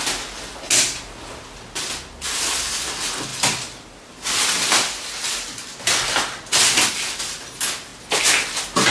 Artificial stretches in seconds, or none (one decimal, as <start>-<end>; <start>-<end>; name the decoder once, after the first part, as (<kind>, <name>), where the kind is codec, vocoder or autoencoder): 3.3-6.9 (vocoder, BigVGAN v2)